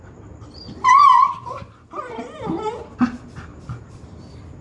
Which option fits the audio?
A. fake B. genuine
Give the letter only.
B